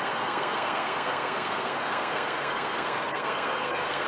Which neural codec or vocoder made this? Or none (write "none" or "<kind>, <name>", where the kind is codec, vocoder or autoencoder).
codec, SNAC